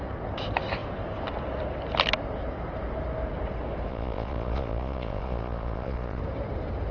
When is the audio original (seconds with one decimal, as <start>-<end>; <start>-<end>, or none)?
0.0-3.9; 6.2-6.9